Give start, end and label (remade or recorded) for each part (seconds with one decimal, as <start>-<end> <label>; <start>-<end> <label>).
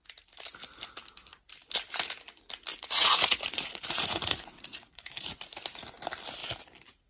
0.0-2.7 recorded; 2.7-5.3 remade; 5.3-7.1 recorded